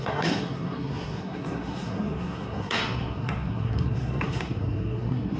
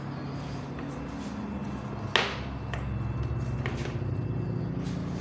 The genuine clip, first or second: second